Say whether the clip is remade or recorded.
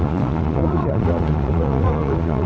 remade